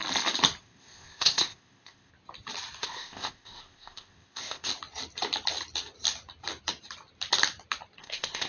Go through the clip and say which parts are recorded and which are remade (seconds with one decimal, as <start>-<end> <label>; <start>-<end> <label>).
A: 0.0-0.6 recorded; 0.6-2.1 remade; 2.1-2.8 recorded; 2.8-4.7 remade; 4.7-8.0 recorded; 8.0-8.5 remade